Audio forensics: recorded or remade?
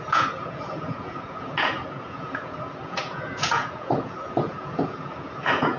remade